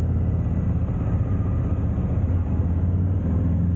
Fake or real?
real